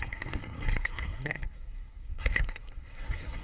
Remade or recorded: remade